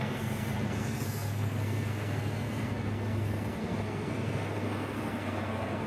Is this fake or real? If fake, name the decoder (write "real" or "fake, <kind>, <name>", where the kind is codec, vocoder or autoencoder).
fake, codec, SNAC